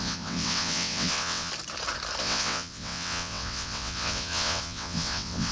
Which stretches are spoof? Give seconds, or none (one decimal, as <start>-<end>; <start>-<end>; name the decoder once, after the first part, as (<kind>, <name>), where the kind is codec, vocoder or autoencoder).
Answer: 0.0-1.5 (vocoder, WaveNeXt); 2.2-5.5